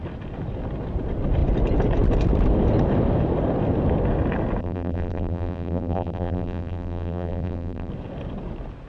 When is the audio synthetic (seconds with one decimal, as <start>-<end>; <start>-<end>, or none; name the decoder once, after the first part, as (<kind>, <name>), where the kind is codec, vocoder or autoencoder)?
4.6-7.9 (vocoder, BigVGAN v2)